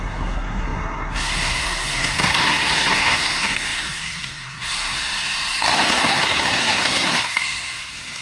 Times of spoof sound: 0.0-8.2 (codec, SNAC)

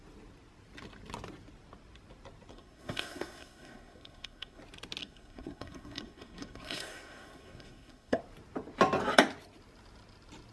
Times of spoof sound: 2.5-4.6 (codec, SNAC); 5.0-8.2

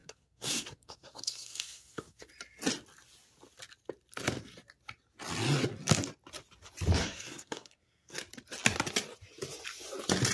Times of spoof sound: 0.0-2.3 (codec, SNAC); 7.0-8.2

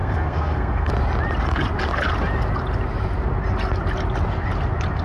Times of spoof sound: 0.0-0.9 (codec, SNAC)

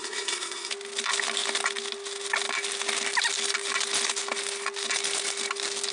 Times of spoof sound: 0.0-0.7 (codec, SNAC)